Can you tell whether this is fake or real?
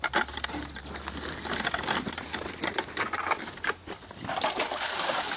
real